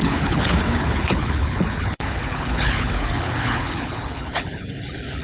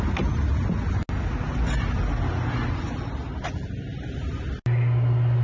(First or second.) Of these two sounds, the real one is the second